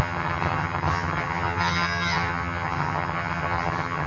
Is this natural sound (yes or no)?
no